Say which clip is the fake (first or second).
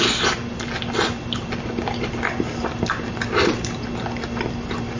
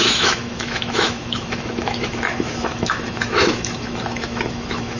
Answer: second